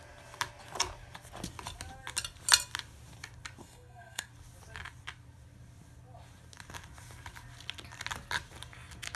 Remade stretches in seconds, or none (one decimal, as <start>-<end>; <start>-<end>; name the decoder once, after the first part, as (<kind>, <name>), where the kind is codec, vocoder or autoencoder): 3.6-4.3 (codec, SNAC)